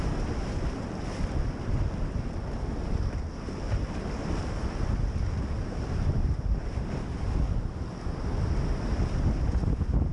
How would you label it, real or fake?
real